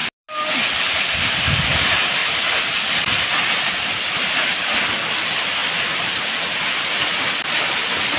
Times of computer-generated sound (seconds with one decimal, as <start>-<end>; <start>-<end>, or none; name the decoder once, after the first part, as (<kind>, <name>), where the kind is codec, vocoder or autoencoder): 0.8-5.6 (vocoder, BigVGAN v2)